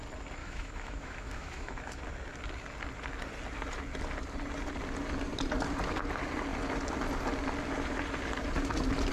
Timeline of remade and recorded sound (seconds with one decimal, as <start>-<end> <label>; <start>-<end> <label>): 0.0-0.4 recorded; 0.4-2.0 remade; 2.0-9.1 recorded